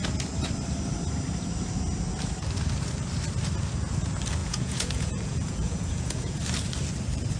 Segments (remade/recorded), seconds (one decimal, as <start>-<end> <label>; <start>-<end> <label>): 0.0-4.4 recorded; 4.4-6.4 remade; 6.4-7.4 recorded